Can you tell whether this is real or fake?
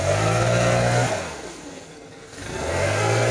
fake